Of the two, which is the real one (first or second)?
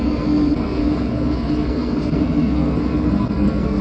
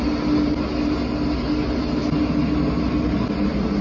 second